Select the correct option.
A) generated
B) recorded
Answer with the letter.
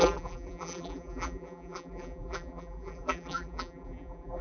A